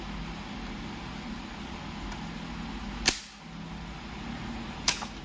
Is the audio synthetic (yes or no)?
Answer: no